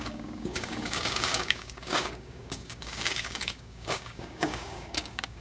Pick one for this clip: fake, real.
fake